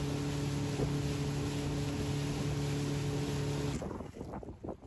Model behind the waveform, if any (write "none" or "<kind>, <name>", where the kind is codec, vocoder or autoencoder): none